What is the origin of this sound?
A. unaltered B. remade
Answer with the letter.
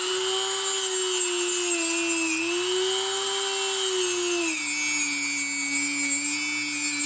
A